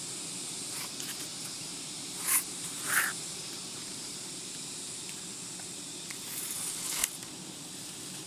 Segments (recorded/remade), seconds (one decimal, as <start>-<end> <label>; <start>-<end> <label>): 0.0-1.3 recorded; 1.3-5.0 remade; 5.0-8.3 recorded